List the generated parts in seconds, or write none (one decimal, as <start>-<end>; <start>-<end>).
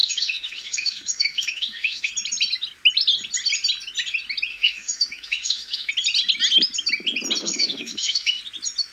0.0-2.1; 4.5-5.9; 7.4-8.4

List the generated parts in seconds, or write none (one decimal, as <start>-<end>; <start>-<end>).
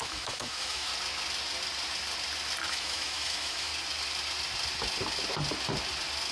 0.0-0.9; 2.7-3.7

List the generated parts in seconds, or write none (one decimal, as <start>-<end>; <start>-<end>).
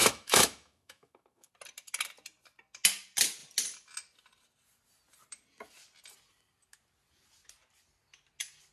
0.0-1.5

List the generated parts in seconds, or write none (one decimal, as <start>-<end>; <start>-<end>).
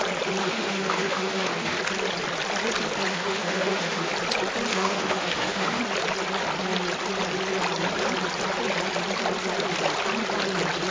0.4-1.8; 3.1-4.1; 4.7-5.8